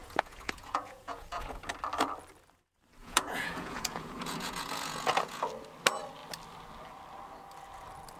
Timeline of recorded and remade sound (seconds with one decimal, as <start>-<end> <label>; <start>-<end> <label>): 0.0-1.7 remade; 1.7-3.0 recorded; 3.0-5.4 remade; 5.4-8.2 recorded